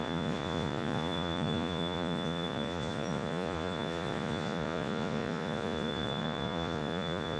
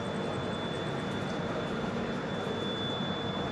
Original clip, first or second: second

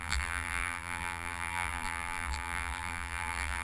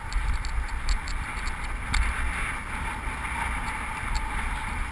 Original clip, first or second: second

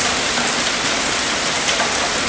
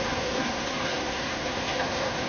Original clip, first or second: first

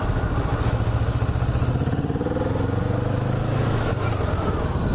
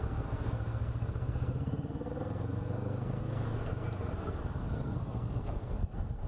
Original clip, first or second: first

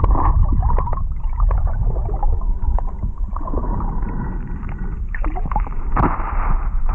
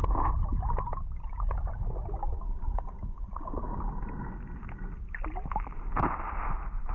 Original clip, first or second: second